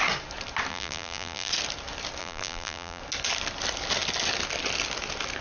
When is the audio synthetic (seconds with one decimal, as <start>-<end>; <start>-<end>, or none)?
0.7-1.5; 2.2-3.0